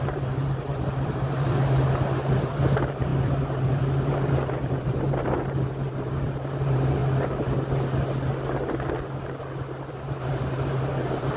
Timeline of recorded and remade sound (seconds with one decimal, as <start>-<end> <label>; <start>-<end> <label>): 0.0-7.0 remade; 7.0-9.9 recorded; 9.9-11.4 remade